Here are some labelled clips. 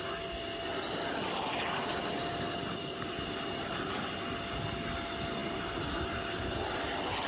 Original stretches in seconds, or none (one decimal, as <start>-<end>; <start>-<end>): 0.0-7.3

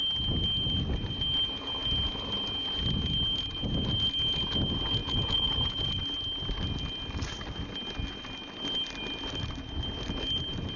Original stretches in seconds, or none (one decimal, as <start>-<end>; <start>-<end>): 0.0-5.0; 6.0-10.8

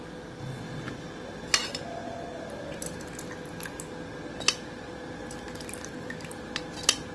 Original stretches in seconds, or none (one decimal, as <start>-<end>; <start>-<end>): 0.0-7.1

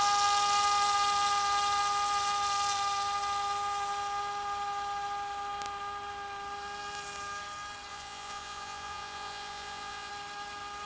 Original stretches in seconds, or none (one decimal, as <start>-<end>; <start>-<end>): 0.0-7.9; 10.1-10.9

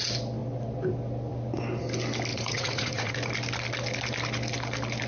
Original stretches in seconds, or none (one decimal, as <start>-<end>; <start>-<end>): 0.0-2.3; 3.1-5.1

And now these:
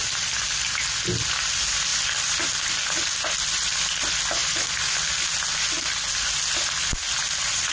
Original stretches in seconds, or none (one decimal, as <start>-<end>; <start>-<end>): 0.0-7.7

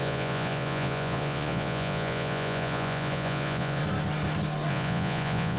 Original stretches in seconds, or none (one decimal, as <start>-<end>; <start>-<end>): 3.8-4.7